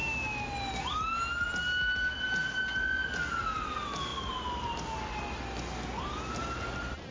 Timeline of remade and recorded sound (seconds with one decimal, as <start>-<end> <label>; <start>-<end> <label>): 0.0-7.1 recorded

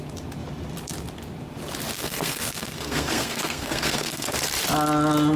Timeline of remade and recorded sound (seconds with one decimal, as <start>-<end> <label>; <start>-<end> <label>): 0.0-1.9 recorded; 1.9-4.3 remade; 4.3-5.4 recorded

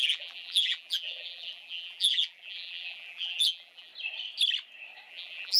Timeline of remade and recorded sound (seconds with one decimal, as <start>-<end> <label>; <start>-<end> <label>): 0.0-3.9 remade; 3.9-5.1 recorded; 5.1-5.6 remade